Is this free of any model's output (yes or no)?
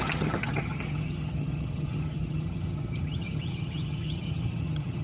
no